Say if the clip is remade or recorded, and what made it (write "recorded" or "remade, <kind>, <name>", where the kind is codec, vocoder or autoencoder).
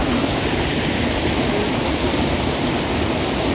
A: recorded